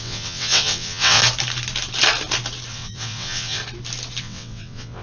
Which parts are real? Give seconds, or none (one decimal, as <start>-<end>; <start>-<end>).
1.2-2.7; 3.6-4.2